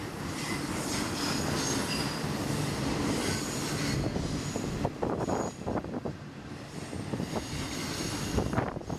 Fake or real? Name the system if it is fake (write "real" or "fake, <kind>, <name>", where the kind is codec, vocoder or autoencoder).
fake, vocoder, BigVGAN v2